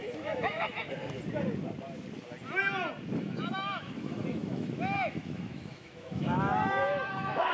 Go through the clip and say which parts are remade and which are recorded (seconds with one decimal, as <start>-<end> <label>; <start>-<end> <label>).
0.0-0.7 remade; 0.7-3.2 recorded; 3.2-7.5 remade